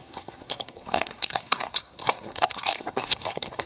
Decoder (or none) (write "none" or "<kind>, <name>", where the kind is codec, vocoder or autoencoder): codec, SNAC